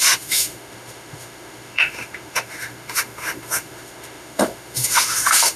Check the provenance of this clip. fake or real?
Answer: fake